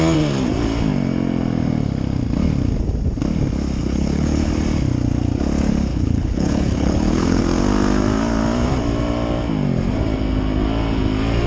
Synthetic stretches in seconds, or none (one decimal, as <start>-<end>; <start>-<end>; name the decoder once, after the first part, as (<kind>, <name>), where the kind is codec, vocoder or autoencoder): 3.8-4.5 (codec, HILCodec); 5.9-7.4